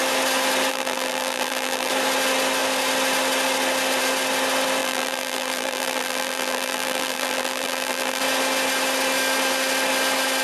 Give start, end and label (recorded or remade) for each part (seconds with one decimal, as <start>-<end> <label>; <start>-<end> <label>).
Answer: 0.0-0.7 recorded; 0.7-1.9 remade; 1.9-4.8 recorded; 4.8-8.2 remade; 8.2-10.4 recorded